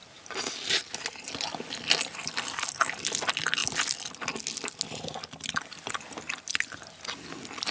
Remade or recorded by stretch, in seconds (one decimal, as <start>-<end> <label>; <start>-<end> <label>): 0.0-7.7 recorded